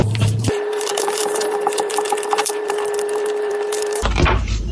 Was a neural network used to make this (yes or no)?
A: yes